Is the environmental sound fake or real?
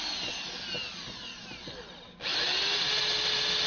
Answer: real